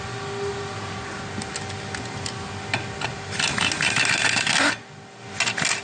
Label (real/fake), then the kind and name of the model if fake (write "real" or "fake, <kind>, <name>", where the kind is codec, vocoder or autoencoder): real